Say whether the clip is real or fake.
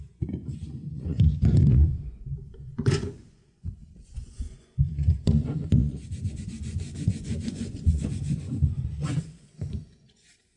fake